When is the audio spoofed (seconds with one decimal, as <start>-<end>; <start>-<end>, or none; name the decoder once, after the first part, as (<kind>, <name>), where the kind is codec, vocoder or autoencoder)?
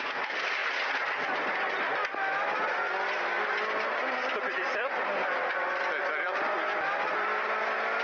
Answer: none